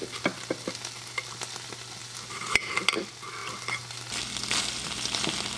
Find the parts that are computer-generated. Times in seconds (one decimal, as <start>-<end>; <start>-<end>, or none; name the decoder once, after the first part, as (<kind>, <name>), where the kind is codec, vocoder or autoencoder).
none